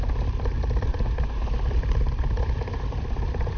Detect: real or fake fake